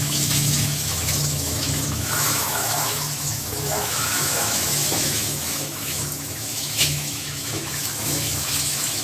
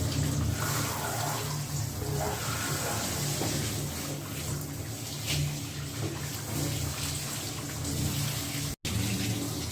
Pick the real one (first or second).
second